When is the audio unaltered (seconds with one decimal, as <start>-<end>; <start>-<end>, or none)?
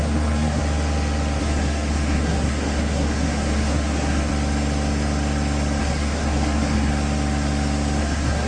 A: 0.6-1.4; 4.3-5.8; 6.9-8.0